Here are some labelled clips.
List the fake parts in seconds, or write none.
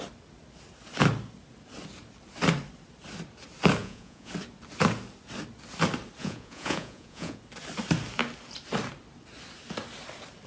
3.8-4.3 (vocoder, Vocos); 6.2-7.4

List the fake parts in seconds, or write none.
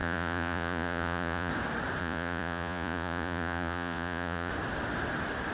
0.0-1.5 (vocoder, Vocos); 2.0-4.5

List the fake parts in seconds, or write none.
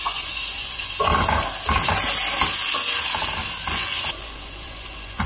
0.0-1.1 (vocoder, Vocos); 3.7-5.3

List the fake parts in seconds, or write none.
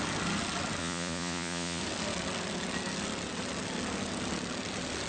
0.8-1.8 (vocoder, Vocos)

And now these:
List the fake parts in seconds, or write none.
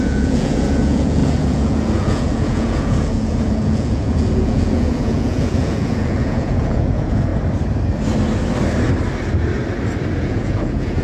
0.0-7.3 (vocoder, Vocos); 10.2-11.0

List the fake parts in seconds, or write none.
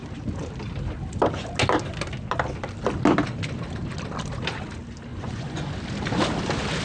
5.1-5.7 (vocoder, Vocos)